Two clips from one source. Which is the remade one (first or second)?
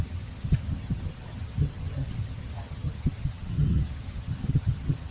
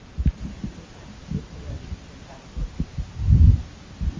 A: first